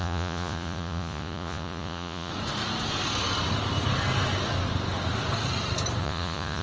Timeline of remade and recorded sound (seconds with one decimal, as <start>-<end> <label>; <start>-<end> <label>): 0.0-2.3 remade; 2.3-6.0 recorded; 6.0-6.6 remade